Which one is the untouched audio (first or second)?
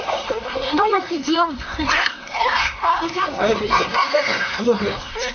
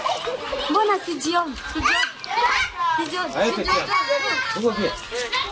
second